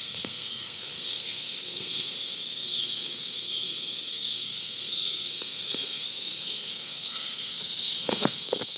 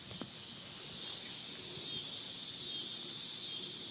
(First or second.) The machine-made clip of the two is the first